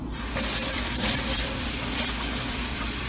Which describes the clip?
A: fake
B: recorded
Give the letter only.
A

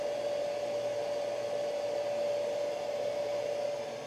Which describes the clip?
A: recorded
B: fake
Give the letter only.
A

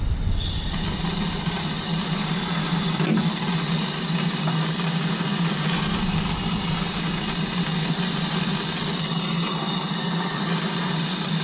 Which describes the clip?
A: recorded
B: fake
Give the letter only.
A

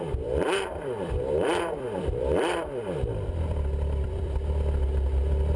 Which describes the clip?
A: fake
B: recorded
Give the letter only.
A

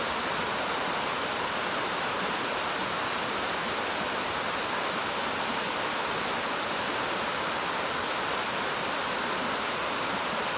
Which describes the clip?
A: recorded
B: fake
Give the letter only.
A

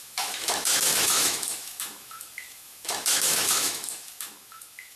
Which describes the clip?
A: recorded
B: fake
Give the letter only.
B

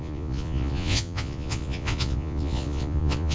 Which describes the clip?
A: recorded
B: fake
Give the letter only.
B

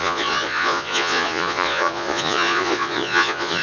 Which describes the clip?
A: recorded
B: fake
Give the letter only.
B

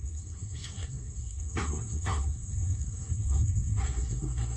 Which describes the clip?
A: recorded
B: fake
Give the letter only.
B